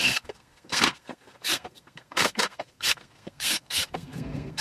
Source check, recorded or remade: remade